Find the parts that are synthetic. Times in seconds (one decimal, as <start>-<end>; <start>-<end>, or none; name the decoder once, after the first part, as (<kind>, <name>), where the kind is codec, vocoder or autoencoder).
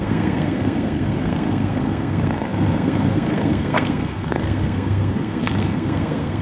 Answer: 0.0-6.4 (codec, SNAC)